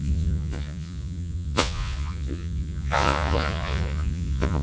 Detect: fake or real fake